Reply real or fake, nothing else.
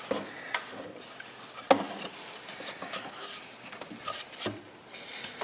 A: real